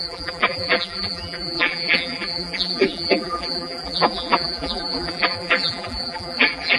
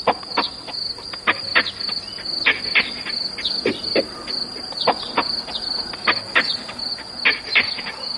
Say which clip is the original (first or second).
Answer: second